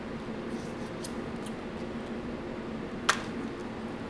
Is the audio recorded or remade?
recorded